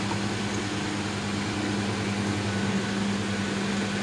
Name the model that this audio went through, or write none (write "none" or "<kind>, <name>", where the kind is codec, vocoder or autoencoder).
none